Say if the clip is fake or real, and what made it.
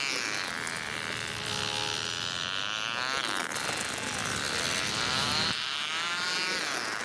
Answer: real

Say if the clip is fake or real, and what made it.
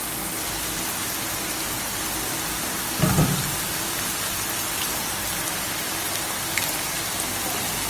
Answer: real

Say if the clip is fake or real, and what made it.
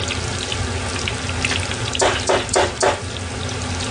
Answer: real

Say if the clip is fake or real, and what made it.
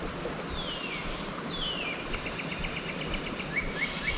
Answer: real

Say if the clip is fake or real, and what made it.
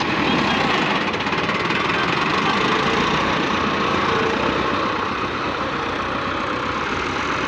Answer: fake, vocoder, BigVGAN v2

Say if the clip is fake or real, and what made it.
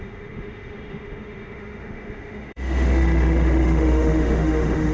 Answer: fake, autoencoder, DAC-VAE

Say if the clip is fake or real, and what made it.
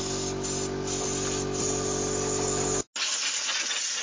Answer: real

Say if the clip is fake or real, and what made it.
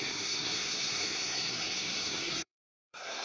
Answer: fake, codec, SNAC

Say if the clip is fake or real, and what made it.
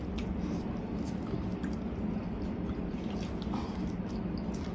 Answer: real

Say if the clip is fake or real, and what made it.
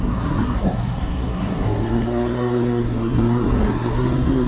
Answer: fake, codec, SNAC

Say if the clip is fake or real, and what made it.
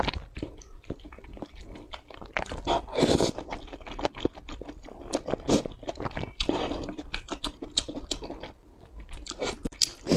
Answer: real